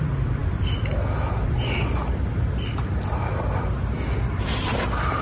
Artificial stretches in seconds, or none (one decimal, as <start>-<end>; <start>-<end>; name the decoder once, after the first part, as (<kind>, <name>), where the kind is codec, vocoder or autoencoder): 0.0-2.0 (vocoder, BigVGAN v2)